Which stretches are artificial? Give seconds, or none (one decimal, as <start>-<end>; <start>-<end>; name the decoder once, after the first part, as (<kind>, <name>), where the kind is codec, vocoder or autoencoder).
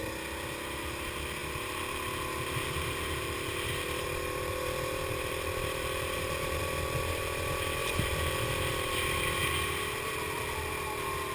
1.4-6.6 (vocoder, BigVGAN v2); 7.8-8.7